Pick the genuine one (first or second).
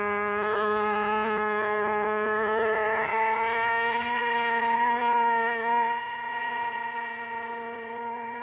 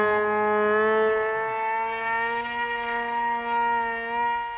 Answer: second